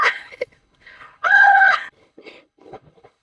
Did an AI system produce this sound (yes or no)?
yes